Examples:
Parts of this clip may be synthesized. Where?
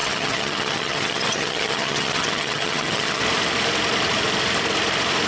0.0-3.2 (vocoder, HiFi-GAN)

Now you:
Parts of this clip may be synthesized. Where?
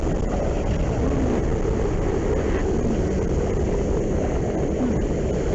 none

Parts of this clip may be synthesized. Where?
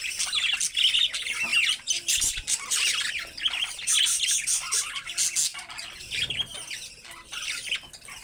1.5-3.1 (vocoder, BigVGAN v2); 5.5-6.7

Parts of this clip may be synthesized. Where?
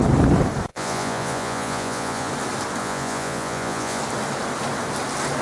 0.7-2.3 (vocoder, Vocos); 2.8-4.0